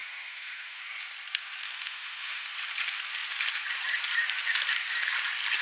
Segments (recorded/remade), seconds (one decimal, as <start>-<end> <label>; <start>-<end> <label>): 0.0-0.8 remade; 0.8-1.6 recorded; 1.6-2.5 remade; 2.5-5.6 recorded